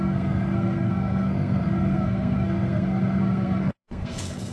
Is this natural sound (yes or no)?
no